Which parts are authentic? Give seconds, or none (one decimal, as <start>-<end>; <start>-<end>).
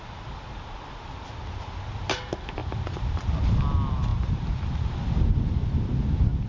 0.0-2.6; 3.4-4.1; 5.0-6.5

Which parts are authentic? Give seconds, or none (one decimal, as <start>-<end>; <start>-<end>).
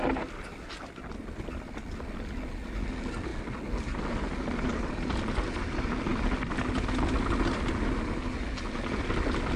0.0-9.6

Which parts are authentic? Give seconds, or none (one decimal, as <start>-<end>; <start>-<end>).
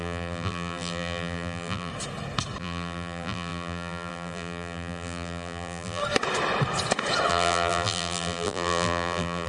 1.9-2.6; 6.0-7.3